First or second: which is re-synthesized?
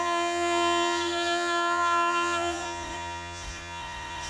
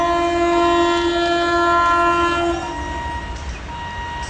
first